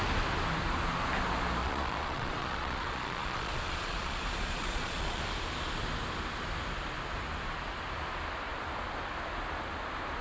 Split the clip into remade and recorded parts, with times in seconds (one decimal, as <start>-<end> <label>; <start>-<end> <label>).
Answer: 0.0-1.6 recorded; 1.6-5.2 remade; 5.2-10.2 recorded